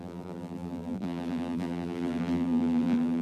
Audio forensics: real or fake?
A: fake